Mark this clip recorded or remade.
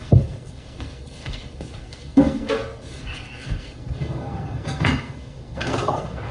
remade